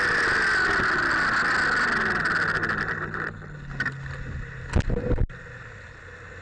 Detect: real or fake real